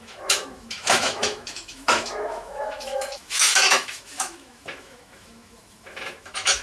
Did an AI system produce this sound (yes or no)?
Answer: yes